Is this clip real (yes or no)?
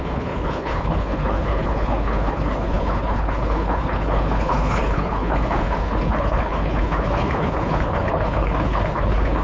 no